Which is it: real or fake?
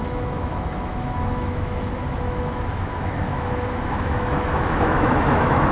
fake